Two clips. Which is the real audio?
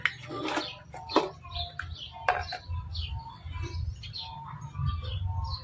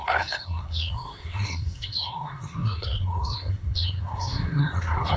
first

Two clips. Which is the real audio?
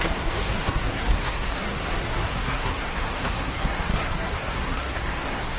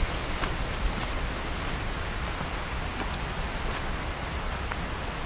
second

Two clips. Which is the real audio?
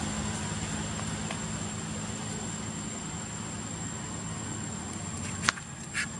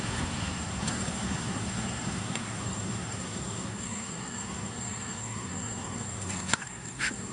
first